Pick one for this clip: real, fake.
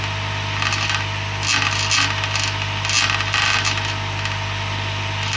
real